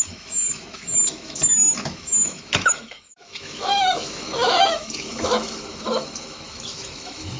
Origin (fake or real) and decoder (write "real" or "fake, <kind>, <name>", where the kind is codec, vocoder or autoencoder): fake, autoencoder, DAC-VAE